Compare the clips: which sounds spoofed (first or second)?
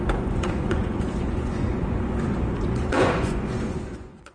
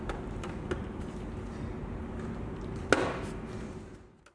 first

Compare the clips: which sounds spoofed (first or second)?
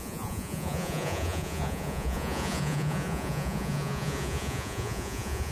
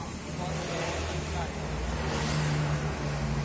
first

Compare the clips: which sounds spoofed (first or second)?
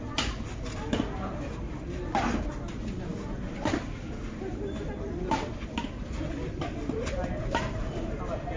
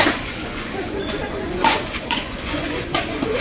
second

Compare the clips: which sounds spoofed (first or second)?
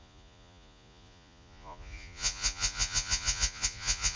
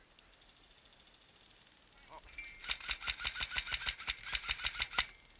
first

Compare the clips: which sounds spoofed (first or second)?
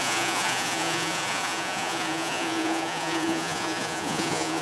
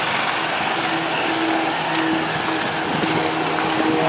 first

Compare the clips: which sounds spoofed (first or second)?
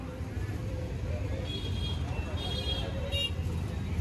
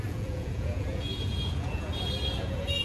second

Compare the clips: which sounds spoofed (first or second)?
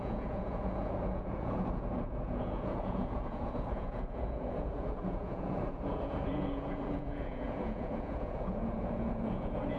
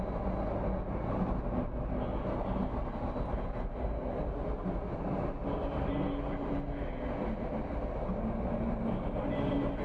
first